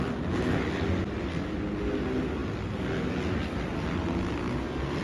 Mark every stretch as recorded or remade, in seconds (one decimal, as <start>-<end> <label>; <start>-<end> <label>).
0.0-5.0 recorded